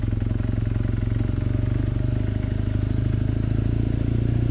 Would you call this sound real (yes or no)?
yes